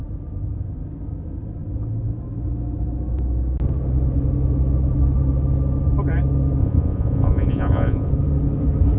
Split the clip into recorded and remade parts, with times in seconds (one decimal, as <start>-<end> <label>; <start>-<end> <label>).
0.0-6.6 recorded; 6.6-8.1 remade; 8.1-9.0 recorded